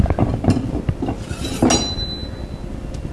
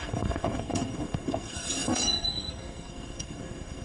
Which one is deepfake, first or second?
second